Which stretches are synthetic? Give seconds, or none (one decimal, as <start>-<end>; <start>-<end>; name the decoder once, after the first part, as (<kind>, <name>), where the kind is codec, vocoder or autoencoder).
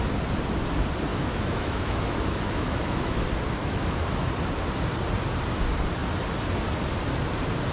1.1-3.2 (autoencoder, DAC-VAE); 3.6-4.2